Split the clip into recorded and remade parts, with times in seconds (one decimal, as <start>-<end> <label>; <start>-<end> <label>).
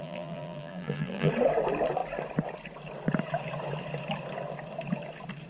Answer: 0.0-1.3 remade; 1.3-5.5 recorded